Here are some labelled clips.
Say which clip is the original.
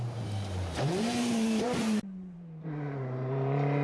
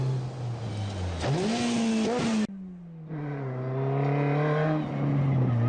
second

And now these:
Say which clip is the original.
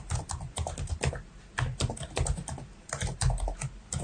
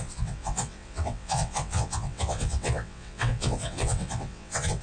first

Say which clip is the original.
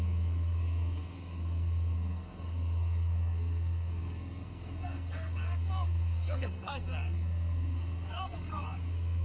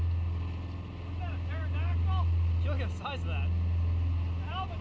second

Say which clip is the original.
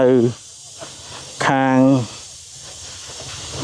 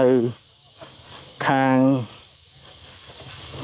first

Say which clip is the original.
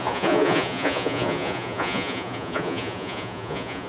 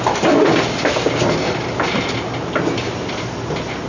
second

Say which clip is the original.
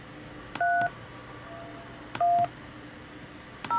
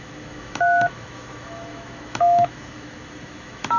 first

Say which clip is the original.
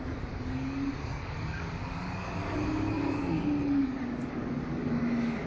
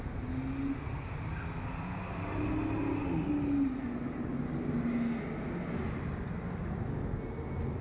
second